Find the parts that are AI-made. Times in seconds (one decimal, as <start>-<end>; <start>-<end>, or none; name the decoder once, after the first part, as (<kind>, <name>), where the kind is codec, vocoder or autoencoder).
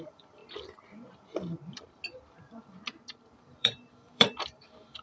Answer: 0.0-0.4 (vocoder, BigVGAN v2); 3.4-5.0